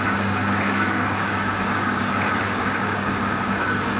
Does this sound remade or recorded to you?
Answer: remade